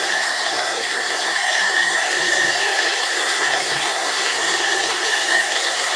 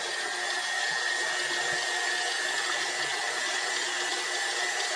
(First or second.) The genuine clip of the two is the second